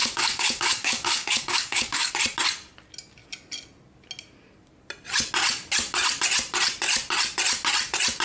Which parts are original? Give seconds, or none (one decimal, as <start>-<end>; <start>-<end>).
2.1-8.2